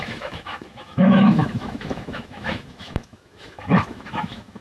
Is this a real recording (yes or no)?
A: no